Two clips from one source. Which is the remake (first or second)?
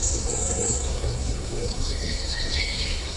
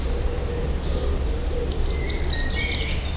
first